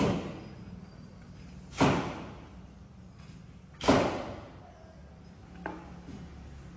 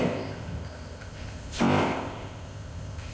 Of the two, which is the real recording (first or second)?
first